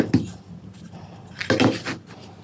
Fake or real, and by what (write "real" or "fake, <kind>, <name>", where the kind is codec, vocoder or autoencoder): real